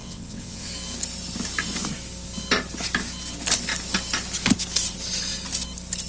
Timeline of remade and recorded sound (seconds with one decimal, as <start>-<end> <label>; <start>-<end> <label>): 0.0-0.7 remade; 0.7-6.1 recorded